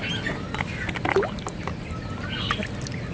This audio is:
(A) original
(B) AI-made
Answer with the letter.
A